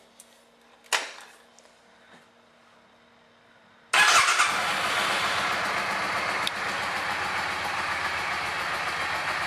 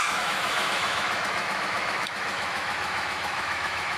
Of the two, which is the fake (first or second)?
second